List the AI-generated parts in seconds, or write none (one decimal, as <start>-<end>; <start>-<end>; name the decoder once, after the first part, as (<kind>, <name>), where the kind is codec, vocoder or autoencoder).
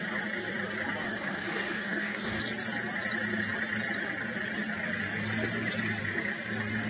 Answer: 1.0-2.4 (codec, DAC)